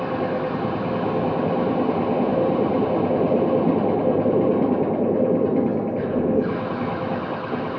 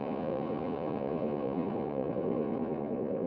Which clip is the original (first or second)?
first